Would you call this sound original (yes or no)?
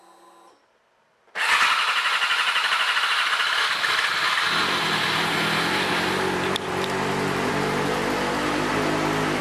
yes